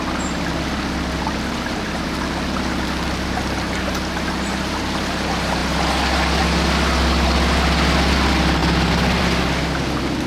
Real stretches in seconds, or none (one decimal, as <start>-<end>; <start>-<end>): 0.0-10.3